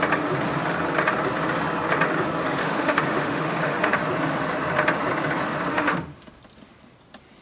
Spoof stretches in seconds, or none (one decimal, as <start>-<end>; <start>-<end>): 2.6-4.0; 5.7-6.4